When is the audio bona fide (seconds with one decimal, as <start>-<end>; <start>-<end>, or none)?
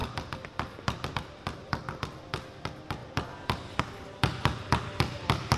0.0-5.6